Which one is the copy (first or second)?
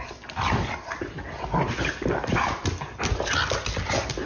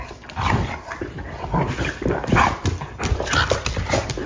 second